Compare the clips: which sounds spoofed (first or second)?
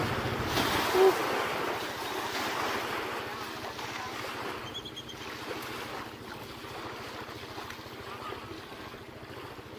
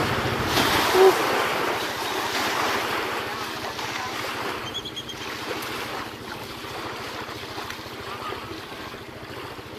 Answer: second